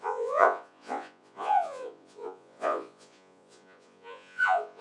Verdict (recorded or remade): remade